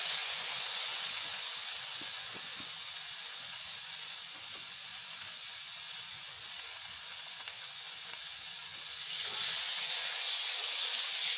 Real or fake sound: fake